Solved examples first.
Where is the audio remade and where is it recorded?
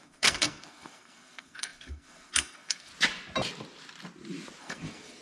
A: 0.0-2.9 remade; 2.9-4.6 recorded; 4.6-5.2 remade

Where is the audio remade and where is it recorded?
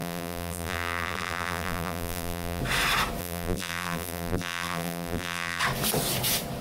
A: 0.0-2.6 remade; 2.6-3.2 recorded; 3.2-5.6 remade; 5.6-6.6 recorded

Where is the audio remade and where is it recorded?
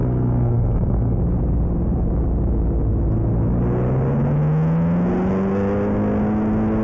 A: 0.0-1.2 remade; 1.2-6.8 recorded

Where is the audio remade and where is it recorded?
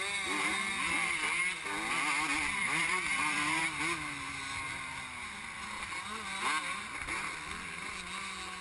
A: 0.0-2.3 recorded; 2.3-3.6 remade; 3.6-8.6 recorded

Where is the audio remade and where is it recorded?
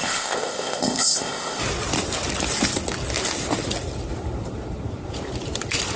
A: 0.0-1.6 remade; 1.6-6.0 recorded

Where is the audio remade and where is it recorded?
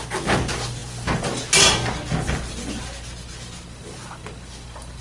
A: 0.0-5.0 recorded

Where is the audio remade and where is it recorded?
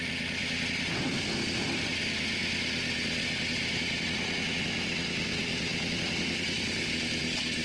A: 0.0-7.6 recorded